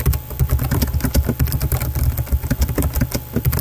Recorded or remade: recorded